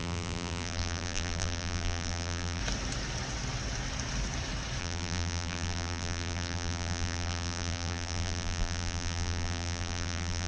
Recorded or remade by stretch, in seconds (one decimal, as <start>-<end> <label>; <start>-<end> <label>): 0.0-2.6 remade; 2.6-4.8 recorded; 4.8-10.5 remade